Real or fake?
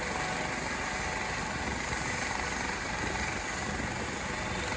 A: real